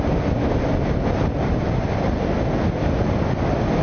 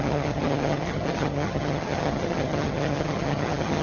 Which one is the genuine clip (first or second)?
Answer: first